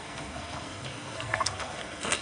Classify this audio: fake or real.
fake